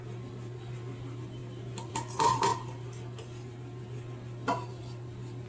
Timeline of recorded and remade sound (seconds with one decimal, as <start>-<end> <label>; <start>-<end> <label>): 0.0-5.5 recorded